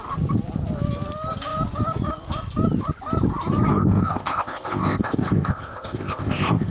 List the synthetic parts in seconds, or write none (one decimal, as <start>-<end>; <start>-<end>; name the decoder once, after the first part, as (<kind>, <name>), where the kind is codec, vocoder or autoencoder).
3.7-6.7 (codec, ZipCodec)